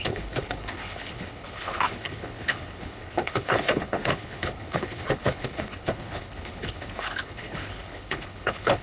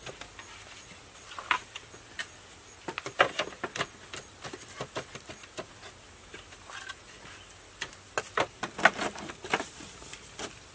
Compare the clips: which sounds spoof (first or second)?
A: first